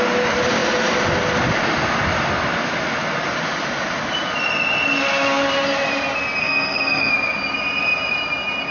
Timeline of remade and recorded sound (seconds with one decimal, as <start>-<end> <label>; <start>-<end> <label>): 0.0-6.4 recorded; 6.4-7.1 remade; 7.1-8.7 recorded